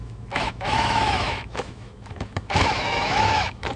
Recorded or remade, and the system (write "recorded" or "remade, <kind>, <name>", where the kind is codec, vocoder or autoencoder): remade, autoencoder, DAC-VAE